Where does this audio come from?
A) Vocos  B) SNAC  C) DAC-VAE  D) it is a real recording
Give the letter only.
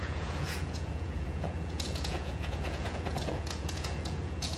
A